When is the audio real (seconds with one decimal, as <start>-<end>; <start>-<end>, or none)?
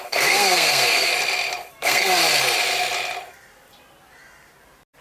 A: 1.1-1.8; 2.2-5.0